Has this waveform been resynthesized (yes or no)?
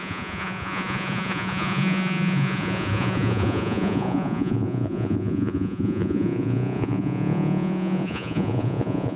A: yes